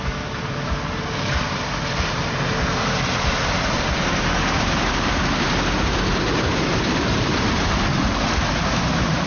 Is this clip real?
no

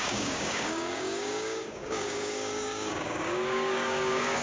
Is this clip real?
no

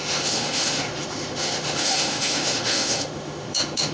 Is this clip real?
no